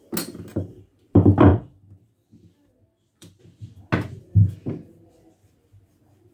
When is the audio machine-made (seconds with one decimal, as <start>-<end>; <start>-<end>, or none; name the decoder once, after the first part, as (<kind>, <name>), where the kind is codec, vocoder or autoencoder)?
1.5-3.4 (vocoder, BigVGAN v2)